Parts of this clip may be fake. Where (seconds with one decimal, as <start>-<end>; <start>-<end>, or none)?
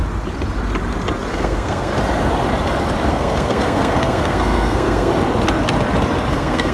1.3-1.9; 3.1-5.1; 6.3-6.7